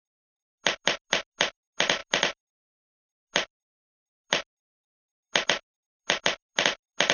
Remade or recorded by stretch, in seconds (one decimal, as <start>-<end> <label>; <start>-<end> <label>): 0.0-7.1 recorded